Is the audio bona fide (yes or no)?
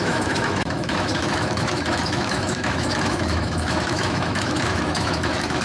no